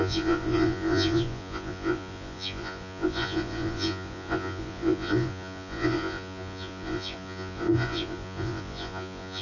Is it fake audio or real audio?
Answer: fake